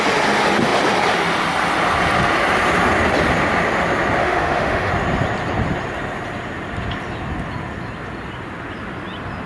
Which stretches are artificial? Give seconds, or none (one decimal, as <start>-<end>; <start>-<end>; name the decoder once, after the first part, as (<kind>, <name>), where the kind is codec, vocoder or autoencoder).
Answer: 4.2-4.9 (autoencoder, DAC-VAE)